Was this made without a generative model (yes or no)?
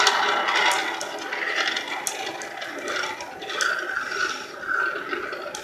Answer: yes